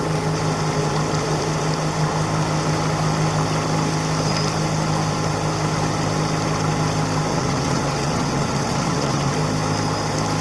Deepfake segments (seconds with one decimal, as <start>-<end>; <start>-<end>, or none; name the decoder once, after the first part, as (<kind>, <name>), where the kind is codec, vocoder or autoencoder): 7.3-9.3 (vocoder, WaveNeXt)